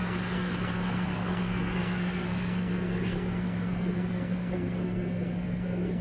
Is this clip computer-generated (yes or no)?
yes